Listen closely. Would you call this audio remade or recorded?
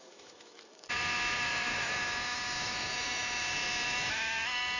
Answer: remade